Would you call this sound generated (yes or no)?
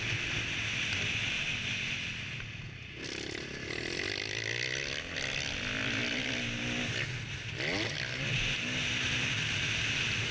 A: no